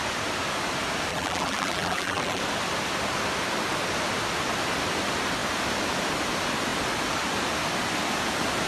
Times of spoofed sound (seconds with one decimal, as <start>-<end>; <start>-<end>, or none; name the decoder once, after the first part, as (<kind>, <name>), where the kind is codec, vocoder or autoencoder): 1.1-2.4 (vocoder, BigVGAN v2)